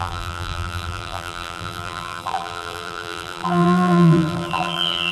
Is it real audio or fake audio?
fake